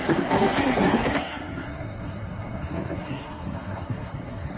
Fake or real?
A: fake